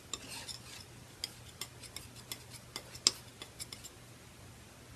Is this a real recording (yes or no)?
yes